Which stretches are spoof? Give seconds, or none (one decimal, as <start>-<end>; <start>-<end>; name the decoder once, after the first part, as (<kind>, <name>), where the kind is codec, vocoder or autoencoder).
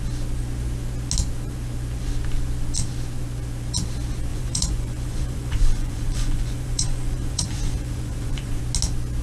4.3-8.6 (vocoder, Vocos)